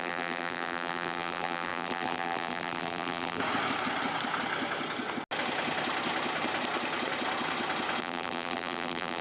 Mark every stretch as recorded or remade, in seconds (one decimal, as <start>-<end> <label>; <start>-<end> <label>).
0.0-3.4 remade; 3.4-8.0 recorded; 8.0-9.2 remade